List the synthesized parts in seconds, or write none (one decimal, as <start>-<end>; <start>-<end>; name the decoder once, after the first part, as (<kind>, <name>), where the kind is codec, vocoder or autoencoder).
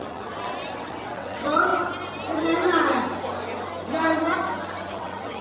0.0-1.7 (vocoder, WaveNeXt); 4.9-5.4